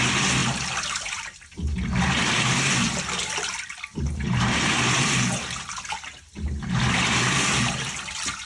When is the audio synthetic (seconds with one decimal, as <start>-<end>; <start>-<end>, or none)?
none